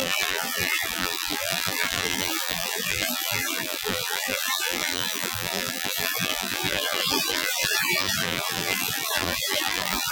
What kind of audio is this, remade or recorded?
remade